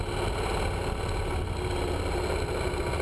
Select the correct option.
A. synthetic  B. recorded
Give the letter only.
B